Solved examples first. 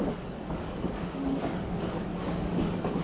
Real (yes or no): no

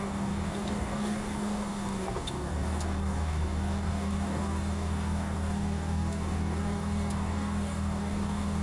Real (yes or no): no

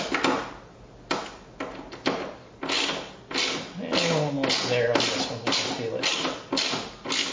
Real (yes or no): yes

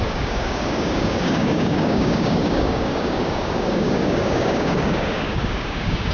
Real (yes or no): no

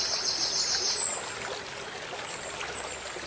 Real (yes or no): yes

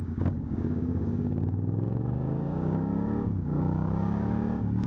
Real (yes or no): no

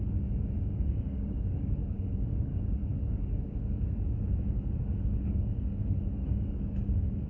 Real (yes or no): no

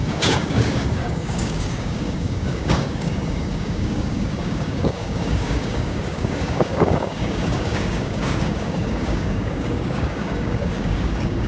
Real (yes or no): no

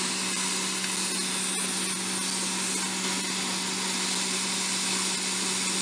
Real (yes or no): yes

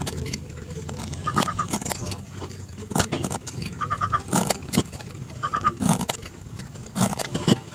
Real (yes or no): no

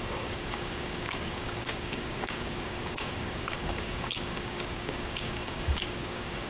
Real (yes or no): no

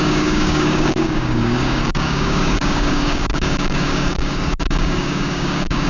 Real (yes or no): no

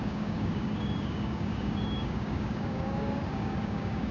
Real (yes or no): no